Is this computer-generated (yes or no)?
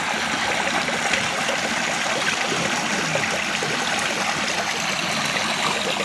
no